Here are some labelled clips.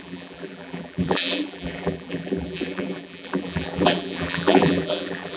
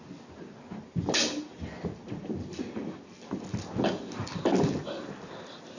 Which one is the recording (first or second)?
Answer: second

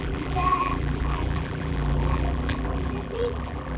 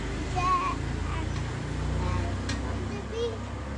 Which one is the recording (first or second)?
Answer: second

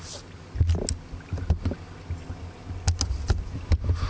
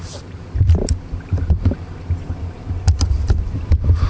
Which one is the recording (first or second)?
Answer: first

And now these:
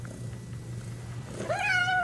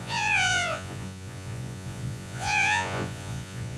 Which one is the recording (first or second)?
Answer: first